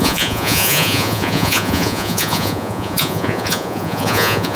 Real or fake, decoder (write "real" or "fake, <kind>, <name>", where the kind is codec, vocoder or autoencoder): fake, vocoder, Vocos